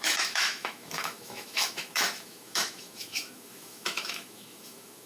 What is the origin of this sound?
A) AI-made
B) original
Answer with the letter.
A